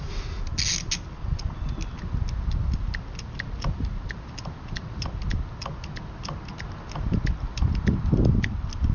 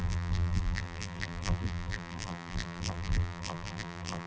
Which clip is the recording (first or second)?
first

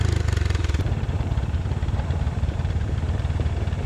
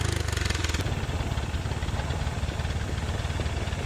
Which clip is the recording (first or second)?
second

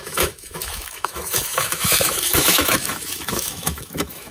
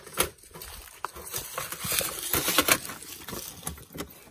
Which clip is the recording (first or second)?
second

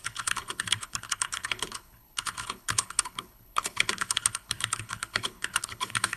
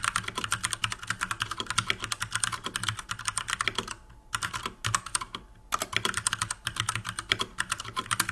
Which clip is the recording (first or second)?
second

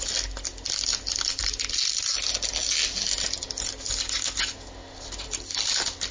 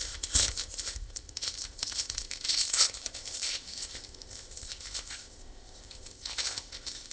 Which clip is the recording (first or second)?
first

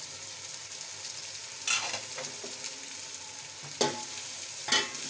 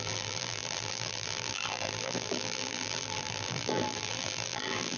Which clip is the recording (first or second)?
first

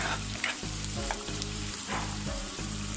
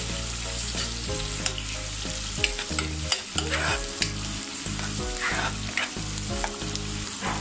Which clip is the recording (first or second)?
second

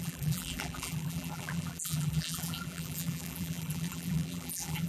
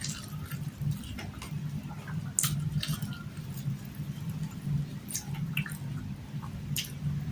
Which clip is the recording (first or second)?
second